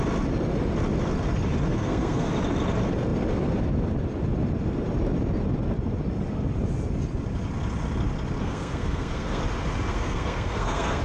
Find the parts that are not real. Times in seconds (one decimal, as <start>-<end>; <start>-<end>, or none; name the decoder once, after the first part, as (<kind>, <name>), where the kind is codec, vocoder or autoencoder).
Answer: 1.7-2.3 (codec, SNAC); 8.4-9.4; 9.9-11.0